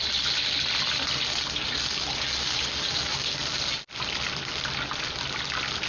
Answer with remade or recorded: recorded